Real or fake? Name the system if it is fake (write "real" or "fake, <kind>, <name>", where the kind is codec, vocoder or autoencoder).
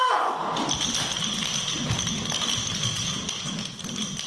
real